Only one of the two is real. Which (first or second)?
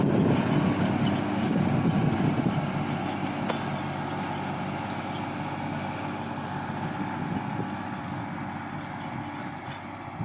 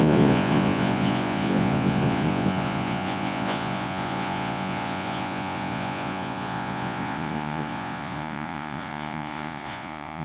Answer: first